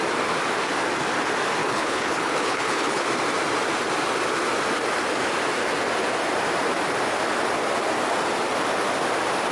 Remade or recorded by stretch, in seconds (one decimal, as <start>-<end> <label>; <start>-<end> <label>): 0.0-1.6 recorded; 1.6-3.0 remade; 3.0-9.5 recorded